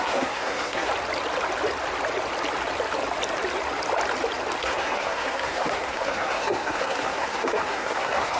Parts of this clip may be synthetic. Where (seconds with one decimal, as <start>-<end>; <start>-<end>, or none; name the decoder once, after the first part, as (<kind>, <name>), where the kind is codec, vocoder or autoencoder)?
0.0-0.9 (codec, SNAC); 4.6-8.4